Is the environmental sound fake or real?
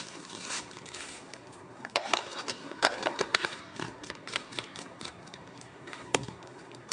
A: fake